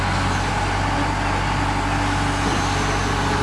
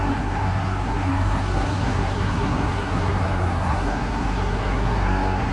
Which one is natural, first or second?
first